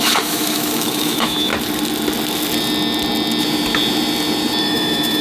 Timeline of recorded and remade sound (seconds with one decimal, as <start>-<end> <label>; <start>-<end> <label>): 0.0-1.5 remade; 1.5-4.6 recorded; 4.6-5.2 remade